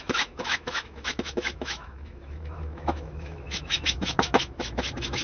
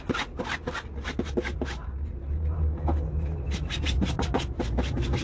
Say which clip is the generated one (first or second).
first